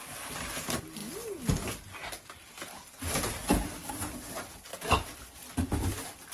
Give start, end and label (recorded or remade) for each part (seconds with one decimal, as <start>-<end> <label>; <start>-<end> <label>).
0.0-6.3 recorded